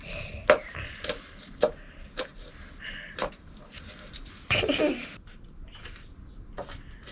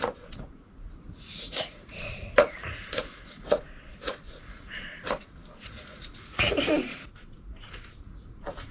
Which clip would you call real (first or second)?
first